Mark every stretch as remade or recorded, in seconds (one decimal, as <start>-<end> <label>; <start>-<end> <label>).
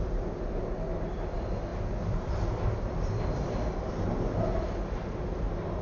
0.0-5.8 recorded